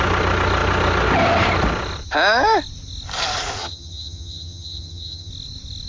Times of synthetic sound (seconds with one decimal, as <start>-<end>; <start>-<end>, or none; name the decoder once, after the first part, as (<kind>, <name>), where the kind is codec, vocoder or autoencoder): 3.6-5.3 (vocoder, HiFi-GAN)